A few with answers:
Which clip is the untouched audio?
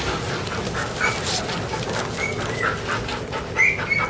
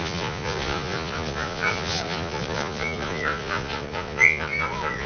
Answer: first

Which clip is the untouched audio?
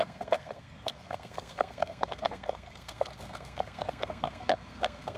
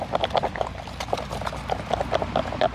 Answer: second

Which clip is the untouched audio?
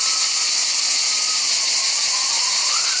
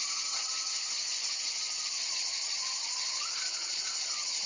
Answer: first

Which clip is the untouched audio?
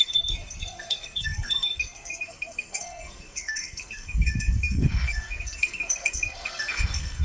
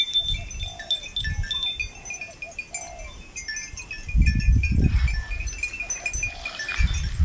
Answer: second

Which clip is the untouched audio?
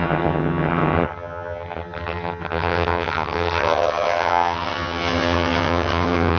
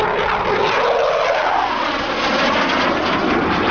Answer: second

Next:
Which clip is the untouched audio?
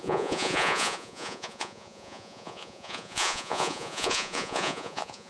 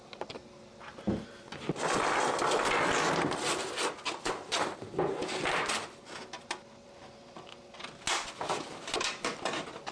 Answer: second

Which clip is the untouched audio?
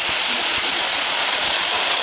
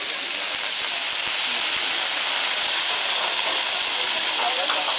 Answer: second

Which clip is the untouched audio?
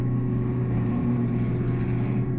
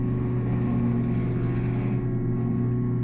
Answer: second